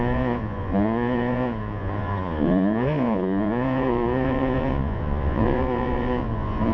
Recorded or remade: remade